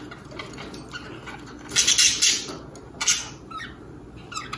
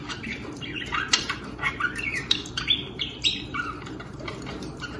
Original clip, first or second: first